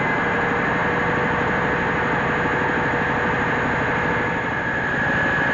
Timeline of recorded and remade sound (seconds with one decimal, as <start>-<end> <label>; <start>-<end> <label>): 0.0-5.5 recorded